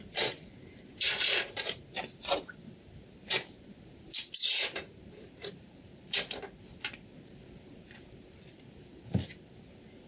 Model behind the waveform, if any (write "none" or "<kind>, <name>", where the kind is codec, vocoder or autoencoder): vocoder, BigVGAN v2